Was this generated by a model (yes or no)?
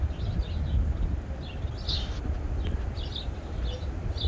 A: no